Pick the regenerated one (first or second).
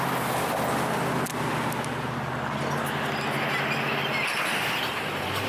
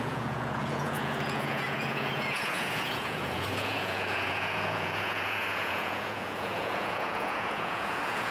second